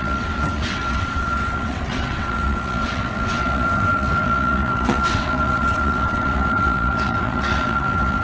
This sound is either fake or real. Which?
fake